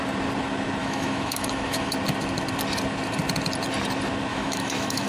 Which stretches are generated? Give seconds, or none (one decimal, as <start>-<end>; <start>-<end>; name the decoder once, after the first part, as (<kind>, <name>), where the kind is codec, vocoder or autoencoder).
0.8-1.9 (autoencoder, DAC-VAE); 4.3-5.1